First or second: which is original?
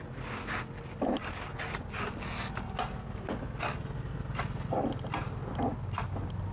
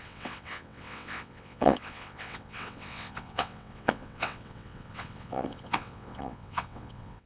first